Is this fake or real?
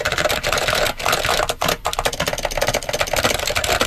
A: real